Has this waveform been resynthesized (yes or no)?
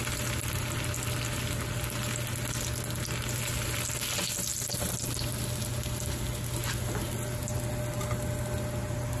no